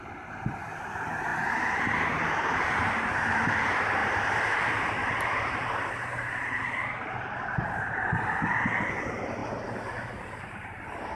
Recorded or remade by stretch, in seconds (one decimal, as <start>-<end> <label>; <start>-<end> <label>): 0.0-1.3 recorded; 1.3-3.1 remade; 3.1-4.0 recorded; 4.0-5.9 remade; 5.9-11.2 recorded

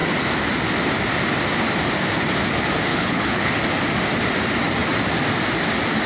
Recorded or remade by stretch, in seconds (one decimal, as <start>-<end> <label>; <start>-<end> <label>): 0.0-2.9 recorded; 2.9-3.5 remade; 3.5-6.1 recorded

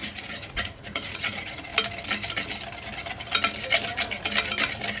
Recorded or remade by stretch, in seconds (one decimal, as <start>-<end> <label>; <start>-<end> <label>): 0.0-1.7 remade; 1.7-5.0 recorded

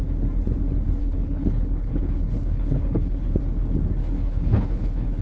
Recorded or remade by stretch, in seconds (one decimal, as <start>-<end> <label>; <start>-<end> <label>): 0.0-1.0 recorded; 1.0-3.4 remade; 3.4-4.0 recorded; 4.0-5.2 remade

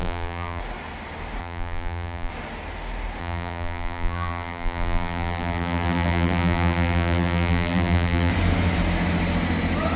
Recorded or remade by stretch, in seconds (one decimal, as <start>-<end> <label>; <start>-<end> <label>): 0.0-0.6 remade; 0.6-1.4 recorded; 1.4-2.3 remade; 2.3-3.2 recorded; 3.2-8.3 remade; 8.3-10.0 recorded